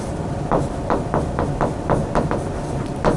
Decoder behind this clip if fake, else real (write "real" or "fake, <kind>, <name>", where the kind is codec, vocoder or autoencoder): fake, vocoder, BigVGAN v2